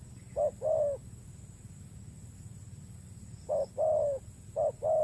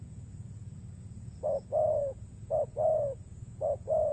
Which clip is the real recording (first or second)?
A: first